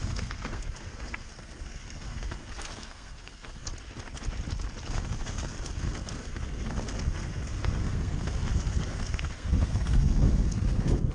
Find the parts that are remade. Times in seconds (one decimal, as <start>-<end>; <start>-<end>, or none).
0.0-3.7; 4.9-11.1